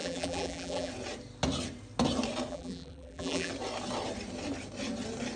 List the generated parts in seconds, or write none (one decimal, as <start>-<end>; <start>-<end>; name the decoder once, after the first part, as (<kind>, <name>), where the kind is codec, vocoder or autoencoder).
0.0-0.9 (vocoder, BigVGAN v2); 2.5-3.5